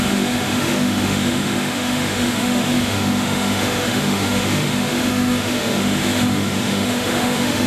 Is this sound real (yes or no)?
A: no